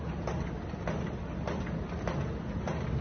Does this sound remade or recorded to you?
recorded